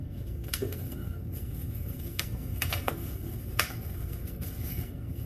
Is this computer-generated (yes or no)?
yes